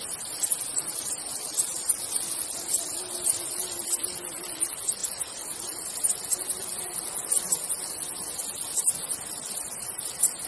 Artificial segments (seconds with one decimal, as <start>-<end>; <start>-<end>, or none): none